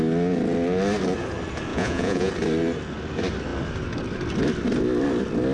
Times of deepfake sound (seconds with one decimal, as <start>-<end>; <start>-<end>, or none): 1.7-2.3